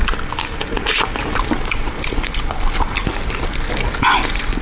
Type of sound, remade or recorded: recorded